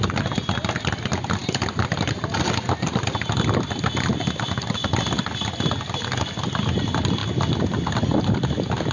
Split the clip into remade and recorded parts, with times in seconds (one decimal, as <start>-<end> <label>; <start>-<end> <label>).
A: 0.0-8.9 recorded